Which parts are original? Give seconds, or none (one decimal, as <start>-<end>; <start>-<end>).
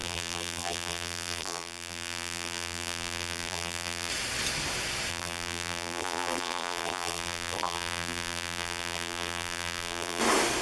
4.1-5.1; 10.2-10.6